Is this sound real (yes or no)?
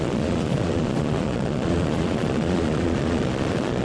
no